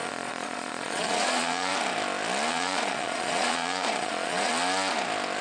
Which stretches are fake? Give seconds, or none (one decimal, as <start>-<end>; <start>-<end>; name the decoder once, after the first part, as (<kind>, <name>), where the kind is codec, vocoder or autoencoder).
0.0-1.7 (vocoder, Vocos); 2.5-4.5